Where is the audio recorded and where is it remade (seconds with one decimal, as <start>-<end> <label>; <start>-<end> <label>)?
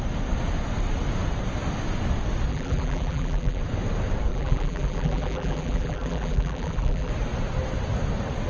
0.0-2.5 recorded; 2.5-3.6 remade; 3.6-4.3 recorded; 4.3-7.1 remade; 7.1-8.5 recorded